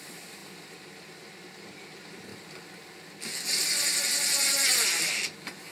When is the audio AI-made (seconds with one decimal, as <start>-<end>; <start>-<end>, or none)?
0.0-2.3; 4.9-5.7